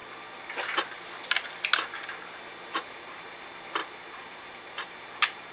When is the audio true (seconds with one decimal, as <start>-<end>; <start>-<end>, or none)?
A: 0.0-2.7